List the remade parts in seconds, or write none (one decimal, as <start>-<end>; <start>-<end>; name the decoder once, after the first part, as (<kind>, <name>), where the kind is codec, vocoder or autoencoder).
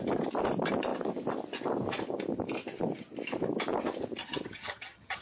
4.2-5.2 (vocoder, HiFi-GAN)